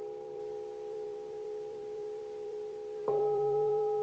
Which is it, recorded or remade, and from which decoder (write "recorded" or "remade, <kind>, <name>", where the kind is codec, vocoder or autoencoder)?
remade, vocoder, BigVGAN v2